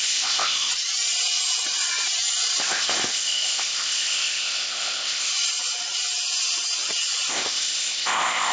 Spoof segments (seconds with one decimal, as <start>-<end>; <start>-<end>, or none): 0.0-0.7; 2.6-5.3; 7.3-8.5